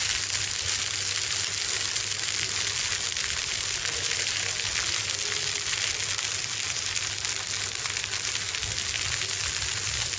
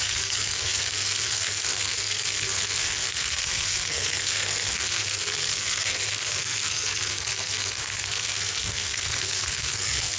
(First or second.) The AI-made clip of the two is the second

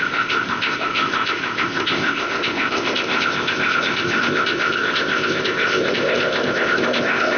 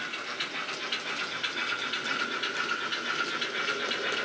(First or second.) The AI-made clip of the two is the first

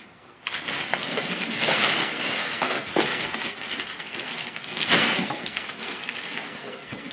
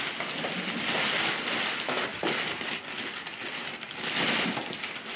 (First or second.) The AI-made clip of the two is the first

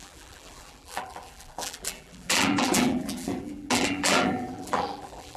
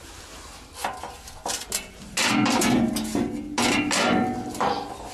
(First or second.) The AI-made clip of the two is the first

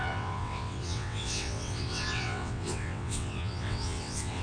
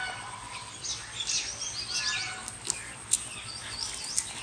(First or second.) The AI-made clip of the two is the first